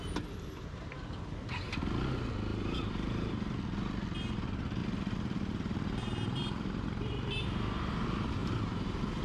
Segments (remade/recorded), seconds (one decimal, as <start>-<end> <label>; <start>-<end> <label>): 0.0-2.5 recorded; 2.5-3.5 remade; 3.5-4.8 recorded; 4.8-7.6 remade; 7.6-8.4 recorded; 8.4-9.2 remade